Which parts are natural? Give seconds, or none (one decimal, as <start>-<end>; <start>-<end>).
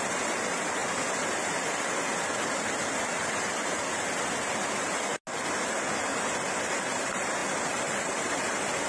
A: 0.0-8.9